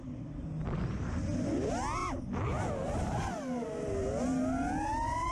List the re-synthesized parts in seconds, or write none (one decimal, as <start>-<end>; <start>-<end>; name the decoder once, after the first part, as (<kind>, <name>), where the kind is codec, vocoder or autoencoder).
none

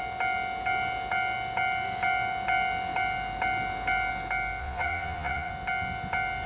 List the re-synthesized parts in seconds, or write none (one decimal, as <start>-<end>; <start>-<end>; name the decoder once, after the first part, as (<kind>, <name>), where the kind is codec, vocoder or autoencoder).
4.6-5.5 (vocoder, Vocos)